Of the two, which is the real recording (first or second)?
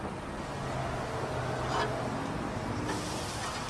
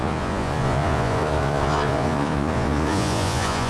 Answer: first